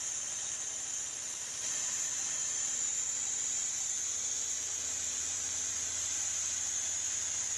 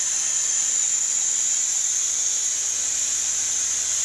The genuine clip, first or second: second